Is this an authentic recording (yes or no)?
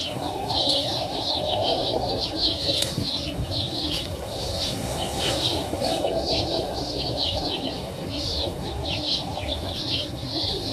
no